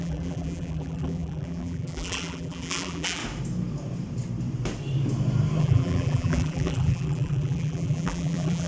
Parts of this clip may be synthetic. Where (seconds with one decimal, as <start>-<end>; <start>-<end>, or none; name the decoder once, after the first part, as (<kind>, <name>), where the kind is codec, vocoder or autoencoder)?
0.0-3.2 (vocoder, BigVGAN v2); 5.6-8.7